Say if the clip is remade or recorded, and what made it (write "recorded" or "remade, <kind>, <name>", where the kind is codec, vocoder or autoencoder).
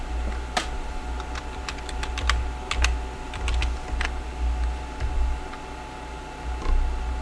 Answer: recorded